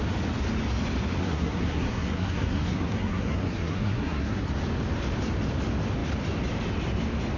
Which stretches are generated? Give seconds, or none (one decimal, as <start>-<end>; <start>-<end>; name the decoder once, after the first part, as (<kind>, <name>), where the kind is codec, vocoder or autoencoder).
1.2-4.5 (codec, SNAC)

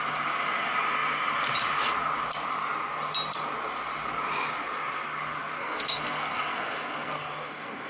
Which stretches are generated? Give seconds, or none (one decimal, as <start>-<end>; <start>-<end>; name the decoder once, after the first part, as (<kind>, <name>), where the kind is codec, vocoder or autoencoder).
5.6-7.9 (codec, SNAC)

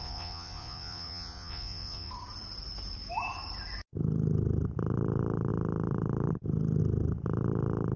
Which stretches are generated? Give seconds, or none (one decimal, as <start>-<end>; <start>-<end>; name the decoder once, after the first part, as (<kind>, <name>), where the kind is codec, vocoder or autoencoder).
0.0-2.1 (vocoder, Vocos)